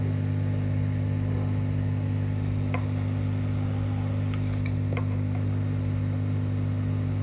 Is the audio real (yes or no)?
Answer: yes